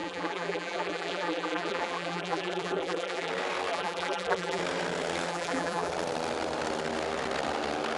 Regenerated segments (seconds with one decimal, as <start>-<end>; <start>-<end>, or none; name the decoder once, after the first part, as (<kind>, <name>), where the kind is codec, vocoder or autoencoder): 0.0-3.3 (vocoder, BigVGAN v2); 3.7-4.6; 5.3-5.9